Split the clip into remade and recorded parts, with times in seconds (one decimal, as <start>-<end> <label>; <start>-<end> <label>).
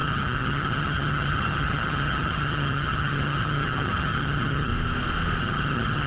0.0-4.7 remade; 4.7-5.4 recorded; 5.4-6.1 remade